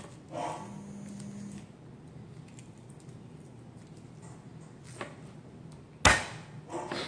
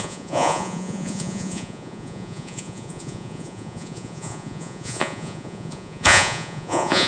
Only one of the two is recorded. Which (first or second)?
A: first